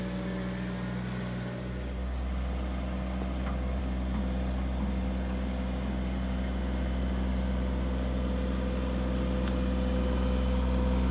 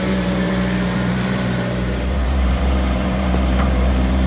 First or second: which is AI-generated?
second